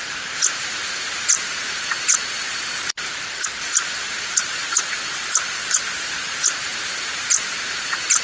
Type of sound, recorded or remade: remade